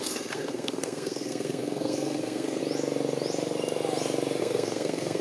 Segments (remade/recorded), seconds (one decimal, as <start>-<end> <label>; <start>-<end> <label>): 0.0-2.6 remade; 2.6-4.4 recorded; 4.4-5.2 remade